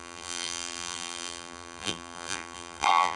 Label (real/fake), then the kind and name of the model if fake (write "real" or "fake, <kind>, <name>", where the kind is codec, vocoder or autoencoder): fake, vocoder, BigVGAN v2